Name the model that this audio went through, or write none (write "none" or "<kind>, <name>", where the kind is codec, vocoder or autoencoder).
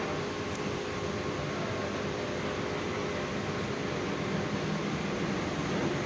none